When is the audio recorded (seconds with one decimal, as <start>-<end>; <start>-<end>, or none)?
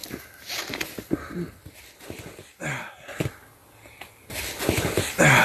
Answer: 0.0-5.4